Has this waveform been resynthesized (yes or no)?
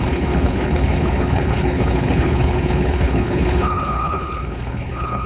yes